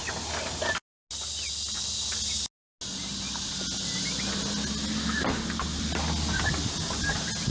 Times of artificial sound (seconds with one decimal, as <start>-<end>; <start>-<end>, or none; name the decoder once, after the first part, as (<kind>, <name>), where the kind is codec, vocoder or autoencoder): none